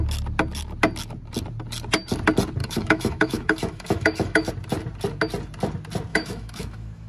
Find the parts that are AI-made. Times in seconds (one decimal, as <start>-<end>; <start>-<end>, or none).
2.6-4.5; 6.1-7.1